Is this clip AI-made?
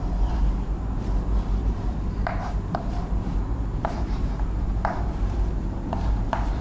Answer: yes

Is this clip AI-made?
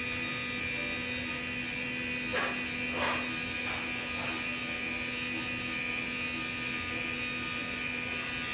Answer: no